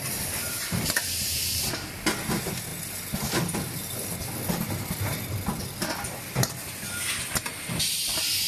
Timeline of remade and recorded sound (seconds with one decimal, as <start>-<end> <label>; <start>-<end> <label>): 0.0-0.4 recorded; 0.4-1.7 remade; 1.7-8.5 recorded